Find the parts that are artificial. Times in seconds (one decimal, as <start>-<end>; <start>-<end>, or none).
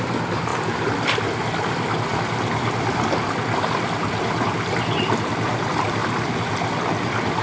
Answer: 0.5-1.2